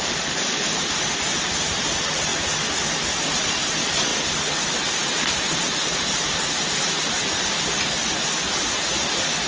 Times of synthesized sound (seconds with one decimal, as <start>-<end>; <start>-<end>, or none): 0.0-2.3; 3.3-8.0; 8.6-9.5